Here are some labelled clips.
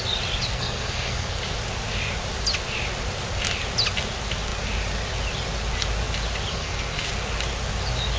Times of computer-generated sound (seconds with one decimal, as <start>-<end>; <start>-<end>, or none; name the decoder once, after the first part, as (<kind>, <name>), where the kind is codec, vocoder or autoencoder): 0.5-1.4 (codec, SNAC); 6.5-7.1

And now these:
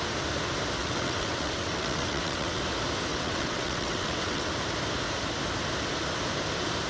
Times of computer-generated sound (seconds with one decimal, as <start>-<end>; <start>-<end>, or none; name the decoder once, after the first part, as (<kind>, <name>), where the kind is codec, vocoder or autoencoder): 0.8-2.6 (vocoder, WaveNeXt); 3.1-4.5

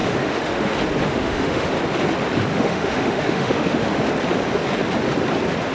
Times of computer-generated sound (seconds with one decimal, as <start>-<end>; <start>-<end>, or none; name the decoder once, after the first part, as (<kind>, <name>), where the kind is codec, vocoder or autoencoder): 0.0-0.7 (autoencoder, DAC-VAE); 1.1-1.7; 2.5-4.0